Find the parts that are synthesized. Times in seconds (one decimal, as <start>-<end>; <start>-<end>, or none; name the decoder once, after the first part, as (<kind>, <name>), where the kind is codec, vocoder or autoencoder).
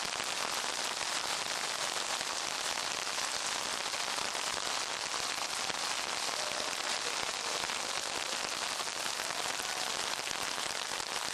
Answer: none